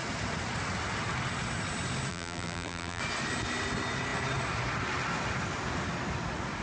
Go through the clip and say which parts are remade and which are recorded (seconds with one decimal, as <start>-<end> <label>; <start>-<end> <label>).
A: 0.0-2.1 recorded; 2.1-3.0 remade; 3.0-6.6 recorded